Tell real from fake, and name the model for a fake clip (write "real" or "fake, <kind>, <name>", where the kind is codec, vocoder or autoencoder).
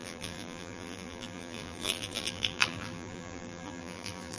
fake, vocoder, BigVGAN v2